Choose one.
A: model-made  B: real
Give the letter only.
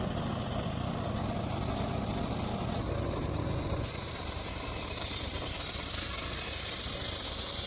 B